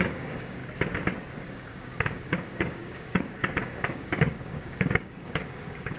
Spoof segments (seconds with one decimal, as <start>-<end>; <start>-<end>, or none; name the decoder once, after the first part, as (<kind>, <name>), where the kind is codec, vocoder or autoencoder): 0.0-0.6 (codec, DAC); 1.3-6.0